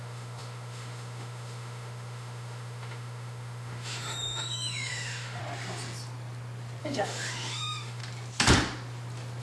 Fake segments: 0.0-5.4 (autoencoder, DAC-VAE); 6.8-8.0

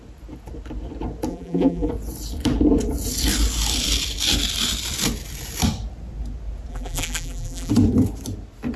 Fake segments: 1.3-1.9 (vocoder, BigVGAN v2); 6.7-7.7

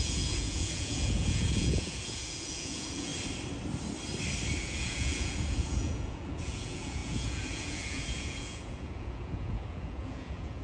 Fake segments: 0.0-3.1 (vocoder, Vocos); 4.6-10.6

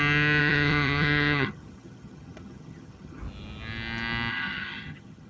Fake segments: 0.4-3.2 (vocoder, HiFi-GAN); 4.3-5.3

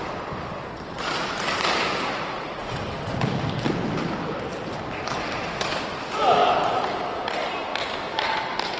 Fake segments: 2.1-2.7 (vocoder, Vocos)